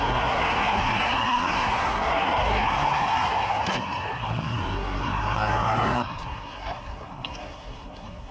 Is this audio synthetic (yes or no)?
yes